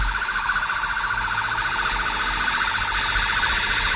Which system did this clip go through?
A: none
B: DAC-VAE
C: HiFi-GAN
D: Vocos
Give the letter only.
A